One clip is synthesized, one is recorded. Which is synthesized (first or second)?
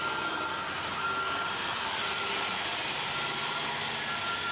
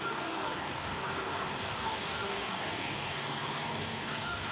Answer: second